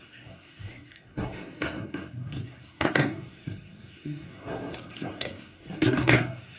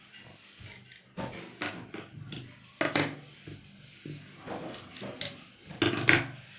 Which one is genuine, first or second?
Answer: second